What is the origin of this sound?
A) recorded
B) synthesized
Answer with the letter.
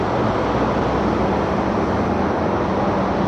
A